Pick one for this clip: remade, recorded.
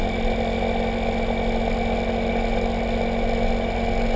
recorded